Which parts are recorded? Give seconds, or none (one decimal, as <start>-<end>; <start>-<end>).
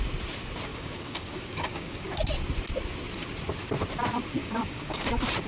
0.0-0.7; 2.1-4.4; 5.1-5.5